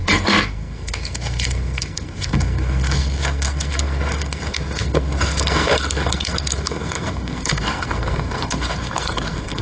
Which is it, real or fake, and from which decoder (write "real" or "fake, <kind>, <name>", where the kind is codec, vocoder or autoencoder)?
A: fake, codec, SNAC